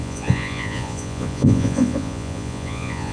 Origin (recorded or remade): remade